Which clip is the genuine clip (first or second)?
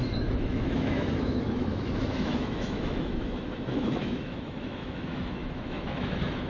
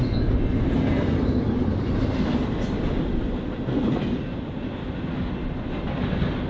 second